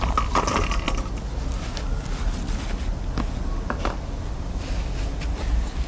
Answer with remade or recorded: recorded